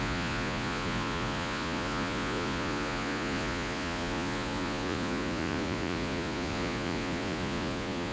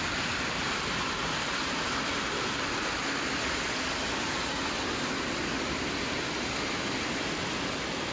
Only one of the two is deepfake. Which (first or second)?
first